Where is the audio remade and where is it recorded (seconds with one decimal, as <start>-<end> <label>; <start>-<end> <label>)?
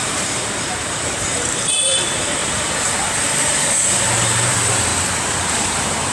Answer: 0.0-4.9 remade; 4.9-5.4 recorded; 5.4-6.1 remade